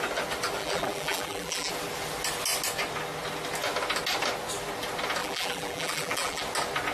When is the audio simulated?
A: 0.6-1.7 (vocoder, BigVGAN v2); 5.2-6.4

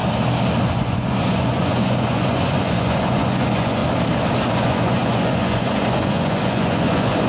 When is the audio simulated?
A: 0.7-3.8 (vocoder, Vocos); 4.5-7.3

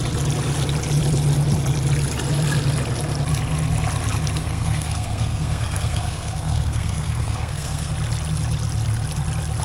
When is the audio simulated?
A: 4.4-7.9 (codec, SNAC)